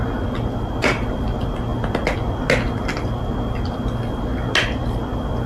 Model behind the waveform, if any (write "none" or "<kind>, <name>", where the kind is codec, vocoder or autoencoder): none